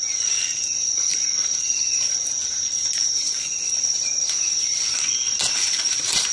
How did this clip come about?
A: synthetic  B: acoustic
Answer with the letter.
B